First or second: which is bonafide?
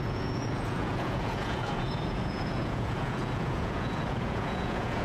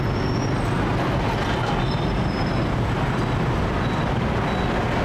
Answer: second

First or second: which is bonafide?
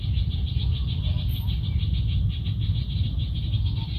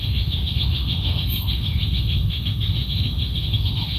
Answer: first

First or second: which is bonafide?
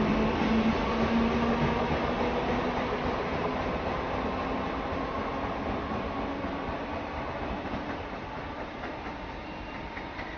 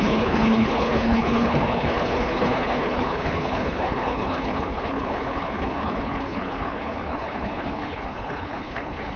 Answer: first